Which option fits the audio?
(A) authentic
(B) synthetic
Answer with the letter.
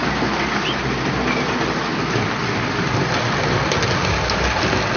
A